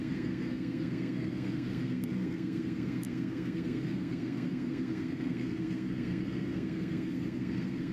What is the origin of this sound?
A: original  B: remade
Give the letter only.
B